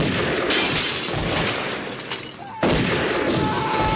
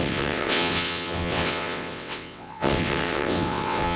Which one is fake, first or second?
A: second